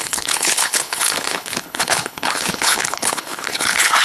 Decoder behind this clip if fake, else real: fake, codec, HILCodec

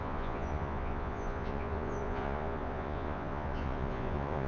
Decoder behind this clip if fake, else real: fake, vocoder, Vocos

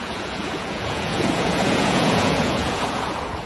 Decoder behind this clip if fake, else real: fake, vocoder, Vocos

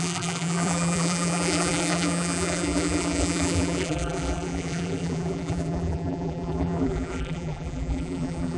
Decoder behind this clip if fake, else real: fake, vocoder, BigVGAN v2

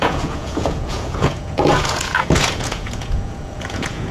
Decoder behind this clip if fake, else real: fake, vocoder, Vocos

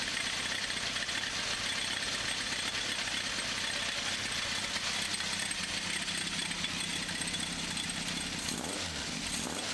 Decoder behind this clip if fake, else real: real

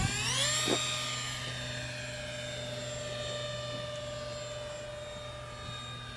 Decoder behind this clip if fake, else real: real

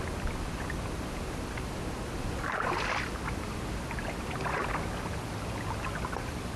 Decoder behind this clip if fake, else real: real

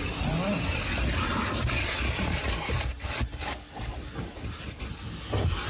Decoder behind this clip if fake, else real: real